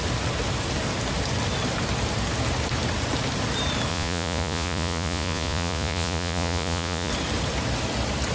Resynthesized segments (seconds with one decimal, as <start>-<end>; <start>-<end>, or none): 3.9-7.1